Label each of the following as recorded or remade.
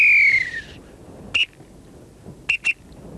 recorded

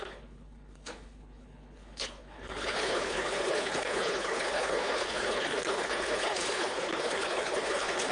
remade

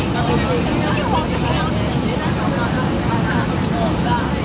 recorded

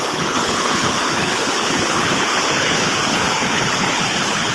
remade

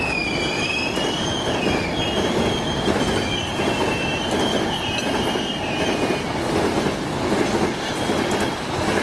recorded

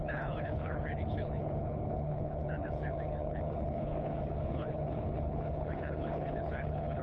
remade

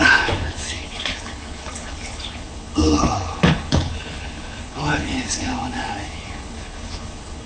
remade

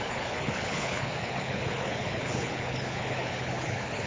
remade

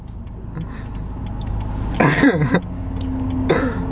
recorded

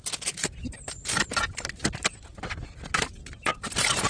recorded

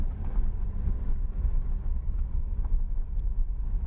recorded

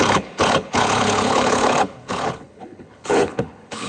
remade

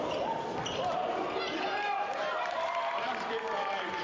recorded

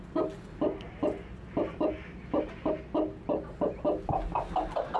recorded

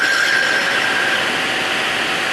recorded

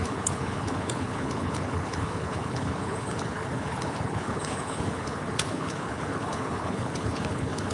remade